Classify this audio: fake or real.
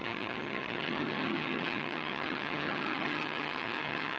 fake